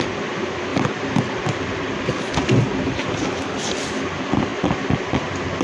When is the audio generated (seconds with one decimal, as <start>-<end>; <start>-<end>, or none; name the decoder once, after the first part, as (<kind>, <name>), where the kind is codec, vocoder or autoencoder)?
none